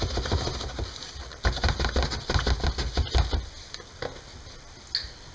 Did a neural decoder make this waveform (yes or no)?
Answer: no